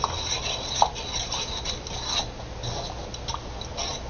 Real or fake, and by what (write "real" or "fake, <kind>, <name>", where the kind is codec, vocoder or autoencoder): real